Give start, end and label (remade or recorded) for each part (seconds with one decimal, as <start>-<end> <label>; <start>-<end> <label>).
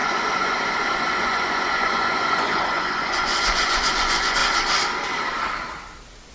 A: 0.0-4.4 remade; 4.4-6.3 recorded